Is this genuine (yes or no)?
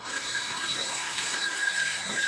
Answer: no